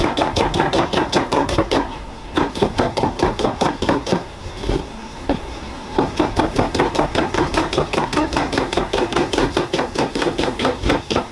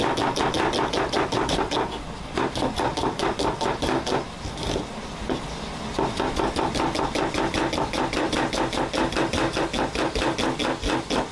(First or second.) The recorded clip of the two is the second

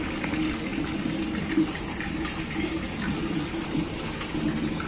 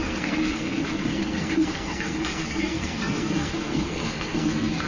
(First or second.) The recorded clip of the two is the first